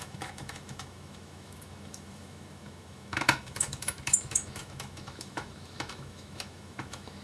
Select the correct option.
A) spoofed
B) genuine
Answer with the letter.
A